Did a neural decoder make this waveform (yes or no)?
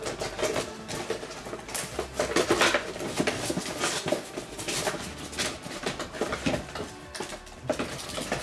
no